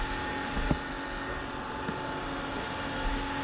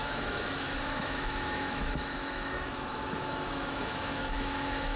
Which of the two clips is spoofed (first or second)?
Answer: second